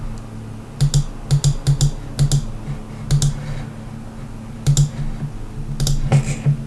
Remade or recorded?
recorded